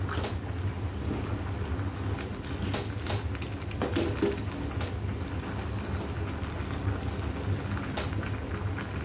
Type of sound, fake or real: real